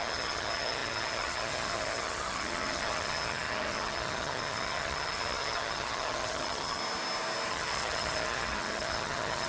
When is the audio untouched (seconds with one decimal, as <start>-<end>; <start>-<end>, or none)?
6.8-7.5